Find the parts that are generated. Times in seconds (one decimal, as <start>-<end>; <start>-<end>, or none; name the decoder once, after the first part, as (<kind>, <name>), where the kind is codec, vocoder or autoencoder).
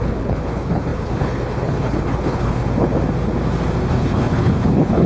0.0-2.6 (codec, HILCodec); 3.9-5.1